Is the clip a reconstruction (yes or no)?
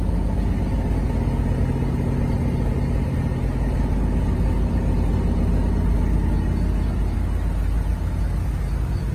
no